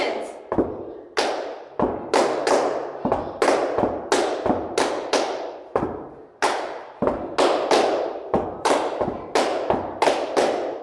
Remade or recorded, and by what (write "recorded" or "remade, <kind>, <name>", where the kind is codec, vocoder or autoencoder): recorded